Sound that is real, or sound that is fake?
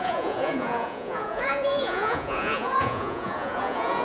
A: fake